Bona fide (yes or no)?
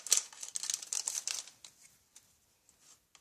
yes